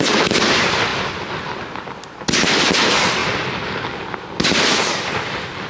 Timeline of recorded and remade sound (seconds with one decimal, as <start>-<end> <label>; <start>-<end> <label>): 0.0-5.7 recorded